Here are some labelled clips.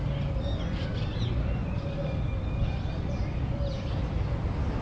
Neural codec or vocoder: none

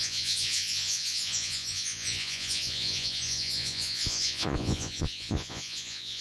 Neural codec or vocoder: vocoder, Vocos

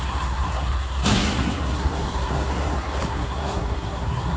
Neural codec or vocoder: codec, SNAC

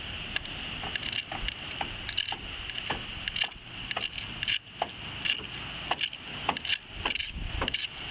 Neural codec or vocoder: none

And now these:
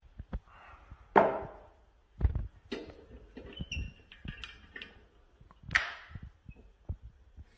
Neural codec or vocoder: none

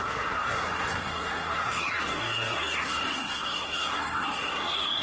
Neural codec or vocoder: codec, SNAC